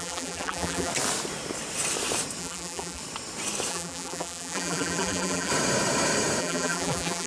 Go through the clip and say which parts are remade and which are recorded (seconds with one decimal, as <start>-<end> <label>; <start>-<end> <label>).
0.0-0.9 remade; 0.9-2.4 recorded; 2.4-3.0 remade; 3.0-3.7 recorded; 3.7-5.5 remade; 5.5-6.4 recorded; 6.4-7.3 remade